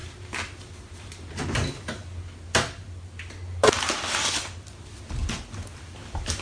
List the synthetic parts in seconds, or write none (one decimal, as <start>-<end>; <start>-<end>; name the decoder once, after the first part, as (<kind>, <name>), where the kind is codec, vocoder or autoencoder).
none